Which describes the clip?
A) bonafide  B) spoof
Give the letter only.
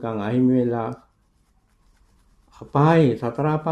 A